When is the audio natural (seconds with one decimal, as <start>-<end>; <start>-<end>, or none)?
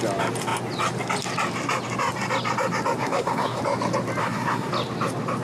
0.0-3.0; 3.6-4.2; 4.7-5.4